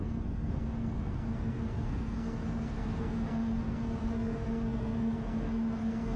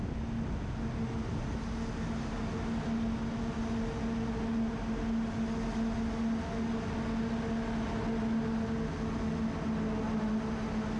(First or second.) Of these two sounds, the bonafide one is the second